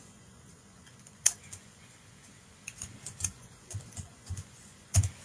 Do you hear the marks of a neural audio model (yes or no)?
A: yes